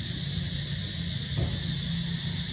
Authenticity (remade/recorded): recorded